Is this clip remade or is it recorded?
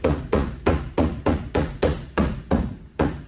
remade